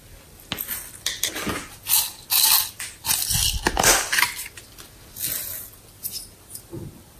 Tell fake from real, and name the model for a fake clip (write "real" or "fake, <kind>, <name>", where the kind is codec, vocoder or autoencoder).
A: real